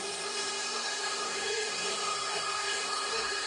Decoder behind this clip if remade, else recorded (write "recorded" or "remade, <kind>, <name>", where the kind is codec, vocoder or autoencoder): remade, codec, SNAC